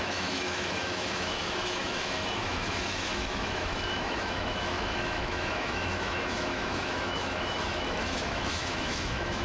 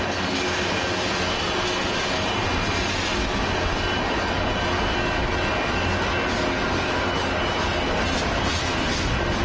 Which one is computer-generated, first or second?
first